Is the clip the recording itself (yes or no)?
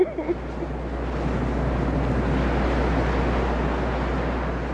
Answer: yes